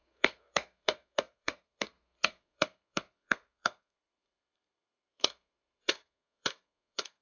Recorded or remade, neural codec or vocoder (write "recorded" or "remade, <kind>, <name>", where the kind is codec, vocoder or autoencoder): remade, codec, SNAC